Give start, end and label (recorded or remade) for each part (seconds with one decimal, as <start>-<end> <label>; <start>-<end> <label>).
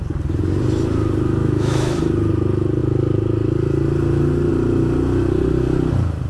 0.0-1.4 recorded; 1.4-2.0 remade; 2.0-6.3 recorded